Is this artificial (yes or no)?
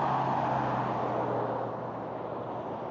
no